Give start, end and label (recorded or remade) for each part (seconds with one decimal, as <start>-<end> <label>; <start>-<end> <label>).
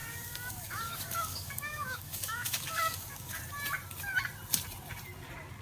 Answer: 0.0-3.4 remade; 3.4-5.6 recorded